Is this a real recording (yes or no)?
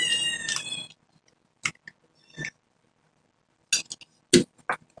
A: yes